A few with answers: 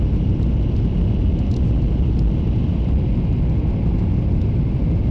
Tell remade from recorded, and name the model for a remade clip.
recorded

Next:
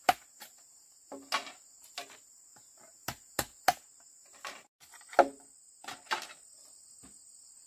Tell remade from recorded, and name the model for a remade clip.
recorded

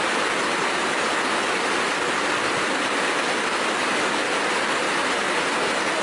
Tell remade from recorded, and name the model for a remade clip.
recorded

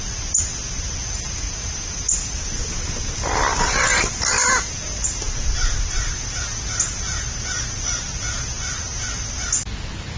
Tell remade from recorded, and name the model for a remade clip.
recorded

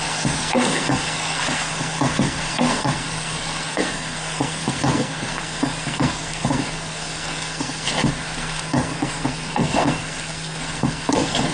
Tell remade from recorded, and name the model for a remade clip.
remade, codec, SNAC